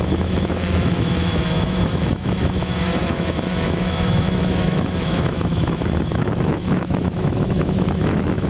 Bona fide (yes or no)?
no